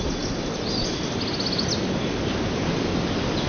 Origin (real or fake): real